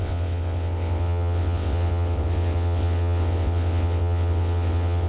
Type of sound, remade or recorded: remade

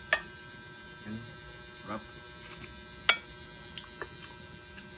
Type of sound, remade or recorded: recorded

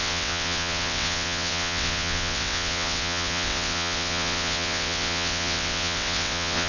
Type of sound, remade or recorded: remade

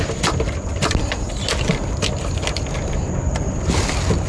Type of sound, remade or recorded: recorded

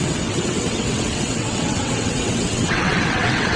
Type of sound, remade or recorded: remade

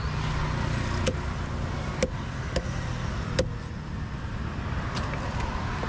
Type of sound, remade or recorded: recorded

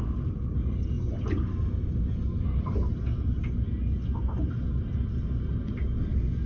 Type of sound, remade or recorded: recorded